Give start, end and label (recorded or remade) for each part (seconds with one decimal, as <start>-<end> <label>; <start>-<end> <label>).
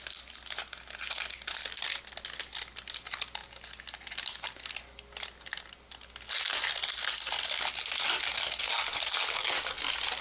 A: 0.0-10.2 recorded